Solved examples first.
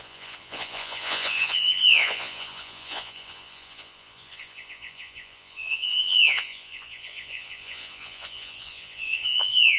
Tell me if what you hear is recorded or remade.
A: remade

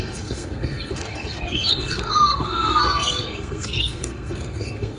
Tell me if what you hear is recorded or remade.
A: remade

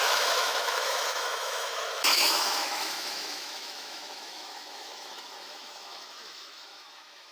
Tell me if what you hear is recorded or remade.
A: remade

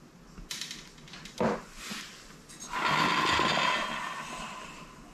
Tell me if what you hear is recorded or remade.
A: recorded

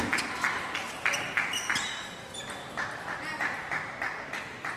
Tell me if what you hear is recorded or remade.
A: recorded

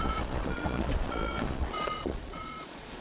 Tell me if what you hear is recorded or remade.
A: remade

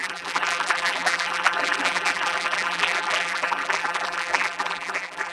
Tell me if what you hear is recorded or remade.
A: remade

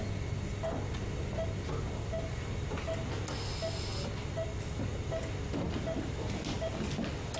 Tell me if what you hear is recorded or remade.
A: recorded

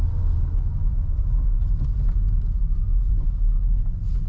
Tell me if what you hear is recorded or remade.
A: recorded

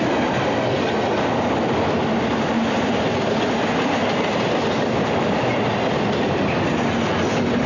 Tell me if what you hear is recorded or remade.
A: recorded